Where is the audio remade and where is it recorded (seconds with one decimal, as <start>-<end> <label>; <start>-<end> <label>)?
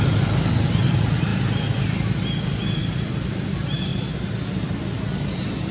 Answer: 0.0-5.7 recorded